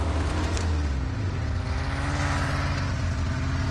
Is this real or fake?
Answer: real